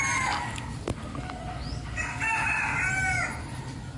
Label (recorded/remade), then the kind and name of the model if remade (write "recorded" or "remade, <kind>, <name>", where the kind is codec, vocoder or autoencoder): recorded